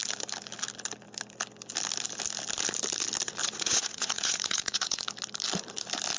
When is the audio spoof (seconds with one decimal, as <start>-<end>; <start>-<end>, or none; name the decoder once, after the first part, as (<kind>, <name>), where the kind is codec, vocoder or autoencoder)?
3.4-5.0 (vocoder, Vocos)